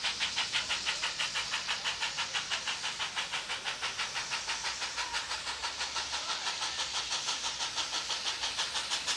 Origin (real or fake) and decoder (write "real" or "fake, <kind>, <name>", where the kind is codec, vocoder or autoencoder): real